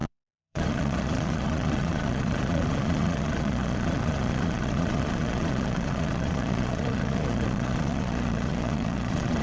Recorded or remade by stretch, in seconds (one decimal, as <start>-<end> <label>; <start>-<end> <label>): 0.0-9.4 remade